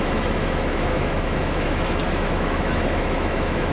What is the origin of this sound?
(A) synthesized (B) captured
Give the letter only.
A